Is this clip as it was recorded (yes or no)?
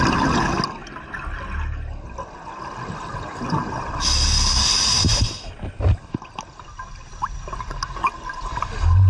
yes